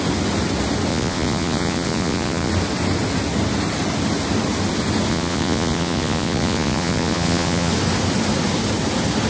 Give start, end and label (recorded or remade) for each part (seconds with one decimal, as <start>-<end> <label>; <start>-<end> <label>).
0.0-0.9 recorded; 0.9-2.5 remade; 2.5-5.1 recorded; 5.1-7.7 remade; 7.7-9.3 recorded